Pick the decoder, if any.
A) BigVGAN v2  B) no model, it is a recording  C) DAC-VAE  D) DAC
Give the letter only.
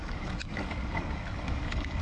D